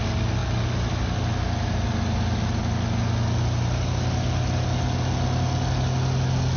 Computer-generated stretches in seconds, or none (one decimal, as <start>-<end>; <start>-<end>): none